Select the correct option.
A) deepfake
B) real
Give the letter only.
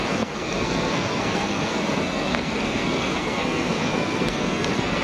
A